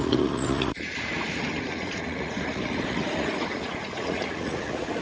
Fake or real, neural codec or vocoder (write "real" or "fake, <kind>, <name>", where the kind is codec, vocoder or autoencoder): fake, vocoder, Vocos